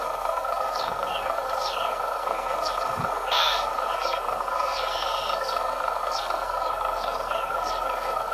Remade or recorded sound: remade